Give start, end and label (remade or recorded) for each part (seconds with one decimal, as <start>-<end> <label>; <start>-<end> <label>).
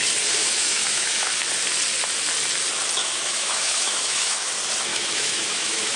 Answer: 0.0-0.4 recorded; 0.4-1.3 remade; 1.3-3.0 recorded; 3.0-4.5 remade; 4.5-4.9 recorded; 4.9-6.0 remade